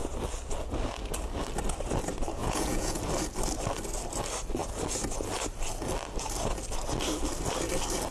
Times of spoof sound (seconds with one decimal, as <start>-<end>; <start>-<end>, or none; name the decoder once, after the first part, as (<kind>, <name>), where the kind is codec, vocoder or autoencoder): 2.4-3.0 (vocoder, Vocos)